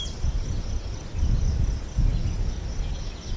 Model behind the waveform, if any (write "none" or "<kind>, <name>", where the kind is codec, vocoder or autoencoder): none